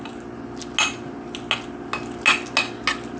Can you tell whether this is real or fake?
real